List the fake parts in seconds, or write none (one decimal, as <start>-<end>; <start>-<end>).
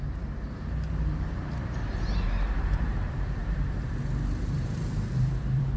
0.0-3.4; 4.4-5.8